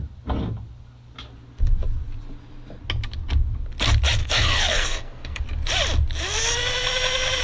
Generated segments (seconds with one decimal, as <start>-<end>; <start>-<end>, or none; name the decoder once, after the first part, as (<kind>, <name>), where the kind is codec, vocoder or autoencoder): 4.2-5.4 (codec, SNAC)